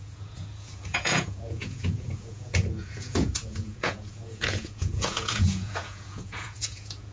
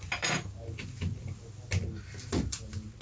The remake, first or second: first